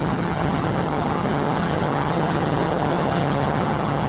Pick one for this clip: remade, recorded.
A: remade